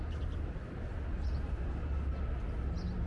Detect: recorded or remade recorded